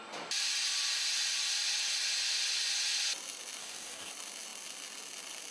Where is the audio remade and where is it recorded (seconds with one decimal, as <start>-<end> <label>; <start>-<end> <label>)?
0.0-3.6 recorded; 3.6-4.1 remade; 4.1-5.5 recorded